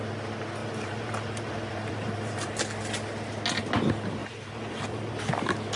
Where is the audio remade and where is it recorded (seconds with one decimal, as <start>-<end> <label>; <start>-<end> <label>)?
0.0-0.6 recorded; 0.6-2.6 remade; 2.6-4.2 recorded; 4.2-5.1 remade; 5.1-5.8 recorded